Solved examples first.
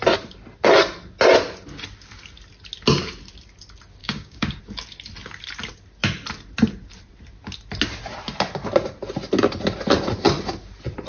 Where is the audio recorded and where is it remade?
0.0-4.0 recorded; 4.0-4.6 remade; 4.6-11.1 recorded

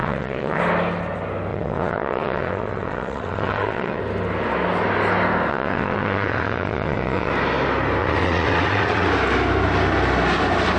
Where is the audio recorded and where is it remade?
0.0-0.6 remade; 0.6-1.5 recorded; 1.5-4.0 remade; 4.0-5.5 recorded; 5.5-7.3 remade; 7.3-8.0 recorded; 8.0-9.1 remade; 9.1-10.8 recorded

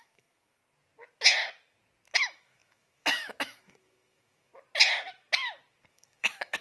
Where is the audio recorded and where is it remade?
0.0-0.6 remade; 0.6-2.2 recorded; 2.2-4.5 remade; 4.5-5.9 recorded; 5.9-6.6 remade

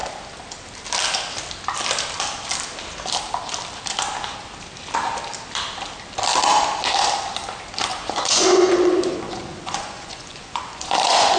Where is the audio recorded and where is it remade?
0.0-7.9 recorded; 7.9-11.4 remade

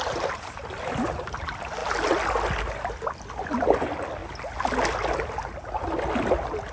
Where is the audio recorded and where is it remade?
0.0-6.7 recorded

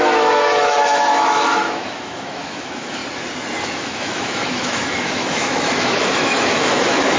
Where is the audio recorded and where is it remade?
0.0-3.0 remade; 3.0-3.6 recorded; 3.6-7.2 remade

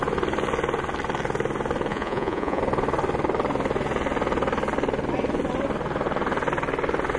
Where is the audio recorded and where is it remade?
0.0-1.9 recorded; 1.9-2.6 remade; 2.6-7.2 recorded

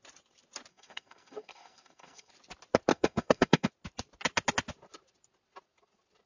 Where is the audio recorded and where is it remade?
0.0-0.7 recorded; 0.7-2.3 remade; 2.3-2.9 recorded; 2.9-3.7 remade; 3.7-6.3 recorded